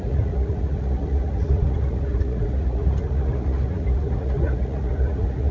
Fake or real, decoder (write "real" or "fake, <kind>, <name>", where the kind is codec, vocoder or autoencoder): fake, vocoder, Vocos